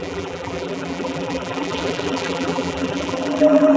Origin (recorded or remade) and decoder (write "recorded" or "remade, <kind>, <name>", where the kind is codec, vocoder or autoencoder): remade, vocoder, BigVGAN v2